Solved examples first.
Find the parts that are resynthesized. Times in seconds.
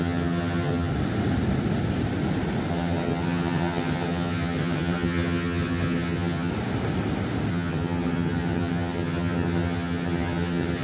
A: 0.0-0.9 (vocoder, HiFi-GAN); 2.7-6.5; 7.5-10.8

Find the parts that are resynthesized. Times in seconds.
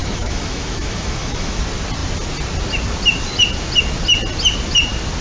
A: 0.0-1.6 (autoencoder, DAC-VAE)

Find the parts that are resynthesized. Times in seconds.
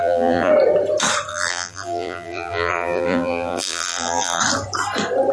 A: 0.0-0.5 (vocoder, BigVGAN v2); 1.3-4.4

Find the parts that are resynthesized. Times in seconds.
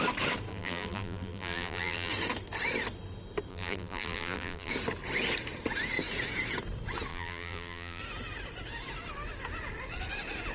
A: 0.5-2.1 (vocoder, BigVGAN v2); 3.5-4.7; 7.1-8.0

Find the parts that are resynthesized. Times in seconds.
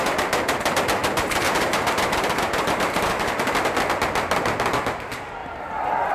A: 1.0-3.3 (vocoder, BigVGAN v2)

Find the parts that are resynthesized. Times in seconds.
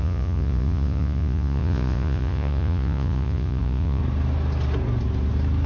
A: 0.0-4.0 (vocoder, Vocos)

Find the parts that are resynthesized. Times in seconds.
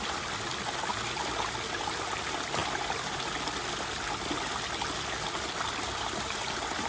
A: none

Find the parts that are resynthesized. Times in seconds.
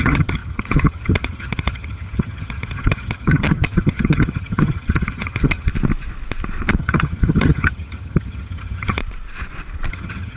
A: 0.0-5.7 (vocoder, HiFi-GAN); 6.8-9.0; 9.9-10.4